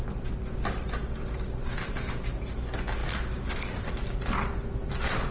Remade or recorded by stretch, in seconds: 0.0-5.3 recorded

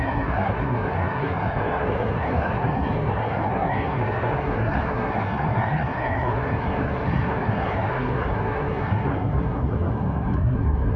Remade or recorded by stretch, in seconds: 0.0-11.0 remade

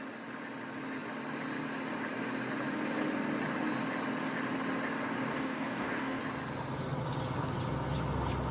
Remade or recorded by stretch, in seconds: 0.0-5.3 recorded; 5.3-6.2 remade; 6.2-8.5 recorded

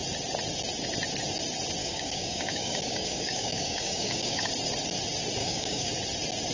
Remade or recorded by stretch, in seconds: 0.0-1.8 recorded; 1.8-4.5 remade; 4.5-5.4 recorded; 5.4-5.9 remade; 5.9-6.5 recorded

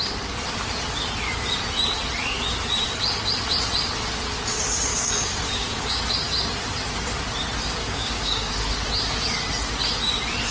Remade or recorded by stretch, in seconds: 0.0-4.9 recorded; 4.9-6.0 remade; 6.0-7.8 recorded; 7.8-8.5 remade; 8.5-10.5 recorded

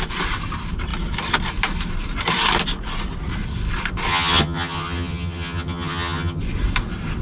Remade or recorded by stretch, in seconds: 0.0-4.1 recorded; 4.1-6.4 remade; 6.4-7.2 recorded